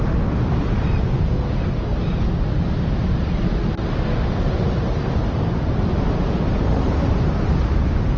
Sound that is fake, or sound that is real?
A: real